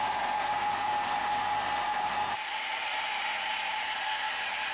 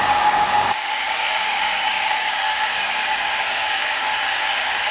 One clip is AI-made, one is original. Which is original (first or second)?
first